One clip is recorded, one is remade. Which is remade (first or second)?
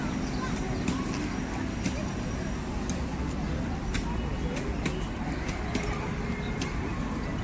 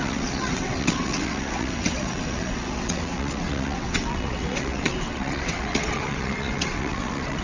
second